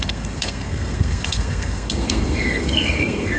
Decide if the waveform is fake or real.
fake